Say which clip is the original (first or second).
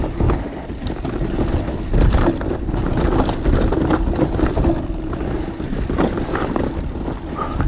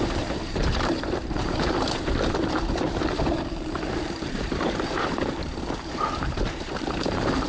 first